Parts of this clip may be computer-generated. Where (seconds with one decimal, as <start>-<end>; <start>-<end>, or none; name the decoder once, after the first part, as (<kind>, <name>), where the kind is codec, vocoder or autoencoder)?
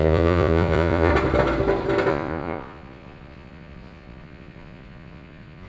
0.0-1.1 (vocoder, Vocos); 2.1-5.7